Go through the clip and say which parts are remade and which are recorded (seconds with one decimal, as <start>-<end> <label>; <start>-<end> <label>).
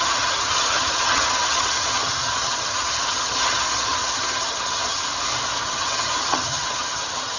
0.0-5.0 remade; 5.0-5.6 recorded; 5.6-7.4 remade